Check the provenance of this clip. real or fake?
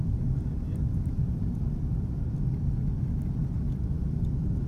real